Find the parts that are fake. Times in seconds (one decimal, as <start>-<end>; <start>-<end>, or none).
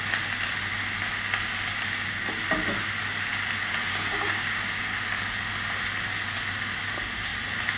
3.9-4.6